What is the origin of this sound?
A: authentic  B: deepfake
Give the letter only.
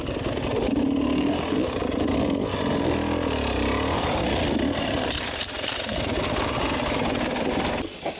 A